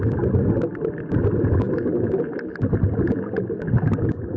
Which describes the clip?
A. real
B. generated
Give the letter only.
A